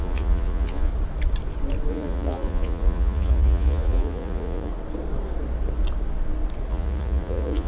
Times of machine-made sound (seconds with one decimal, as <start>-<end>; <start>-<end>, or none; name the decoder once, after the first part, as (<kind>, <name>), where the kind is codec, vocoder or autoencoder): 0.0-0.9 (vocoder, Vocos); 1.9-4.7; 6.7-7.7